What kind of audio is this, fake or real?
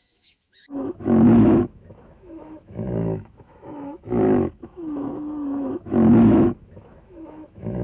fake